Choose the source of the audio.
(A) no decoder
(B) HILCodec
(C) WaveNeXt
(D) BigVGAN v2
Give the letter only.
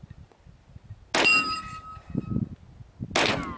A